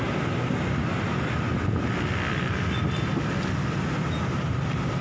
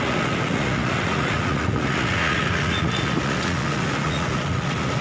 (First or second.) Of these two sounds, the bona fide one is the first